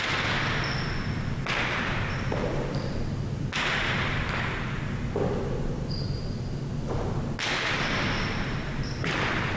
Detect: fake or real real